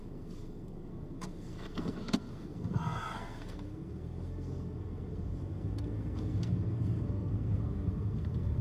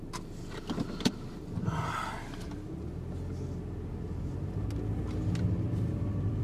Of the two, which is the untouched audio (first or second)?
second